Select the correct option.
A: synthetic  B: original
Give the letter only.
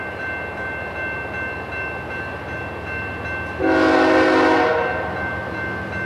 B